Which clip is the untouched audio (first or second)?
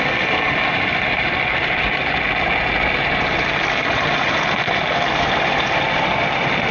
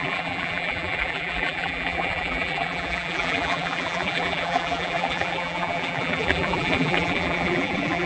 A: first